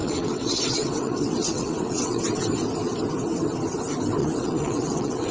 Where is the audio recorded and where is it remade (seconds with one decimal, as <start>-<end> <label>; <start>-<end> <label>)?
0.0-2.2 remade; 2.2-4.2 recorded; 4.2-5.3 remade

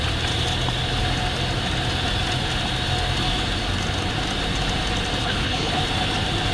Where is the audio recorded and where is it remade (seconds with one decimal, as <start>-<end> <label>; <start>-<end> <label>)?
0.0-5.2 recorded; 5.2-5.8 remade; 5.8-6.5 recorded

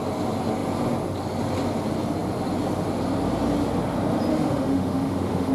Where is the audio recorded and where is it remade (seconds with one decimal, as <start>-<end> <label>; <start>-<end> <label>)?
0.0-4.3 recorded; 4.3-5.5 remade

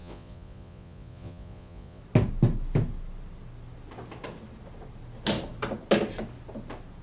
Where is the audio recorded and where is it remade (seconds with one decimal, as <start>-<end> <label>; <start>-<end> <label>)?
0.0-2.0 remade; 2.0-7.0 recorded